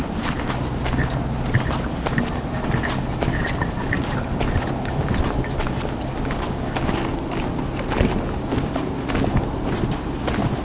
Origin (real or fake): real